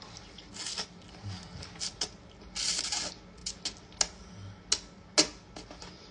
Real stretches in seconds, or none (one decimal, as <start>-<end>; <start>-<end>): 0.0-6.1